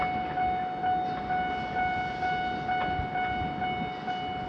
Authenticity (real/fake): real